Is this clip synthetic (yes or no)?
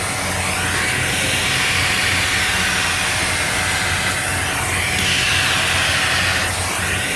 no